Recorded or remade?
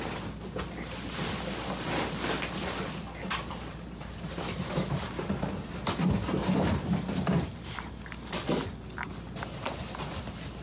recorded